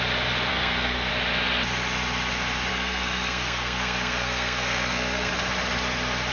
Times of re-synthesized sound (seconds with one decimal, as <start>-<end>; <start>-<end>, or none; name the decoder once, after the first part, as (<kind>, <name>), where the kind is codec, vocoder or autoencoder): 0.5-1.1 (codec, SNAC); 2.7-5.3